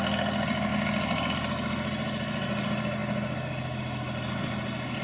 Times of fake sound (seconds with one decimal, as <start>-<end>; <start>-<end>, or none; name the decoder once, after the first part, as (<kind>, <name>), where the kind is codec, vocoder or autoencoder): none